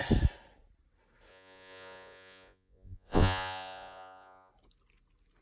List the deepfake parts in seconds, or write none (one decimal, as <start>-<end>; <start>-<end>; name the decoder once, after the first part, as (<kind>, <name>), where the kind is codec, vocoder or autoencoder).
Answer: 1.3-4.5 (vocoder, Vocos)